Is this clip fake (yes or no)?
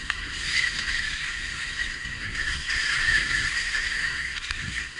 yes